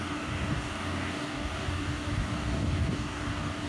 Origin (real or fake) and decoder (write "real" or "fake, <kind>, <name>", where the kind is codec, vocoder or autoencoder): fake, codec, DAC